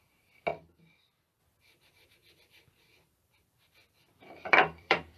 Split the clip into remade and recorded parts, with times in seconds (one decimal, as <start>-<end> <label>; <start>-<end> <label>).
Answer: 0.0-2.2 recorded; 2.2-5.2 remade